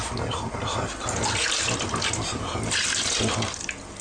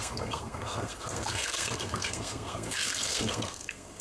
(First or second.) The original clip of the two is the first